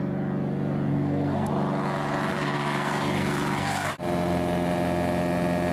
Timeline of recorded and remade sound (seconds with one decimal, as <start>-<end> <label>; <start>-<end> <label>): 0.0-0.9 recorded; 0.9-1.5 remade; 1.5-2.3 recorded; 2.3-3.9 remade; 3.9-5.7 recorded